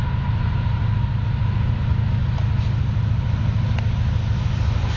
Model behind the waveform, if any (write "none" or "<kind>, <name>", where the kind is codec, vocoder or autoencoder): none